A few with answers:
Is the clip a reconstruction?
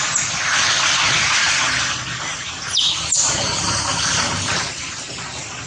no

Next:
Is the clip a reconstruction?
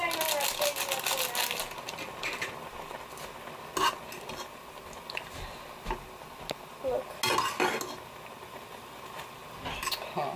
no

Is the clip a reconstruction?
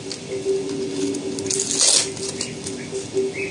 no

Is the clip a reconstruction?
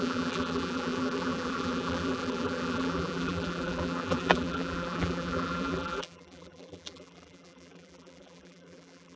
yes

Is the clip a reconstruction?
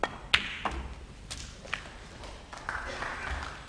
no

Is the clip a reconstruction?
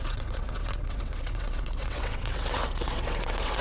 yes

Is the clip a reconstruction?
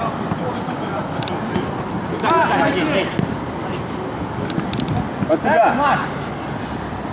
no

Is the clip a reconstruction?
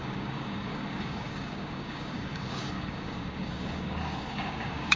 yes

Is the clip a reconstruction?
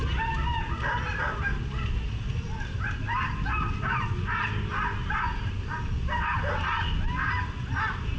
no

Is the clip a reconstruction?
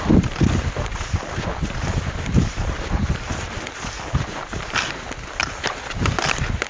no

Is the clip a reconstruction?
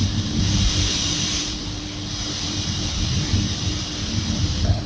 yes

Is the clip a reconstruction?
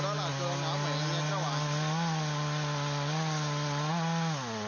no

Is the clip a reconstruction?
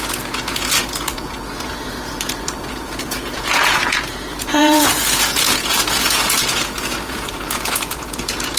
yes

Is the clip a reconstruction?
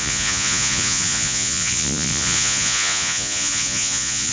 yes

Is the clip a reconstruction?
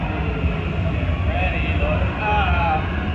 no